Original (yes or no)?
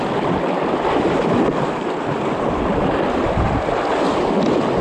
yes